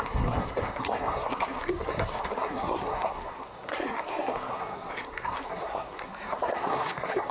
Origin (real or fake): fake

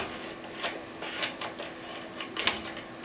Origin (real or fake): real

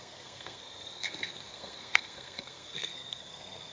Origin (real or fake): fake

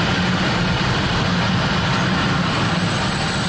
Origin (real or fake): real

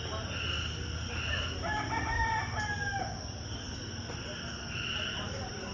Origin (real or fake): real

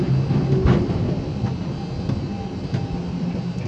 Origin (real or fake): real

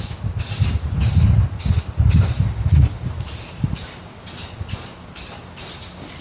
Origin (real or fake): real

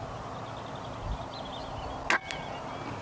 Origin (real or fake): real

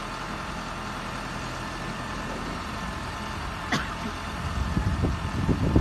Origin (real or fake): real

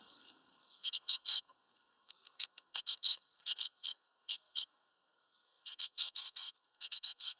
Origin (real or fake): fake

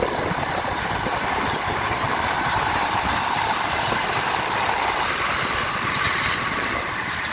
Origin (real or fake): real